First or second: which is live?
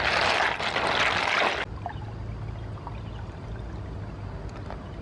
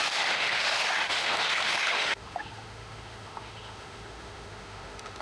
first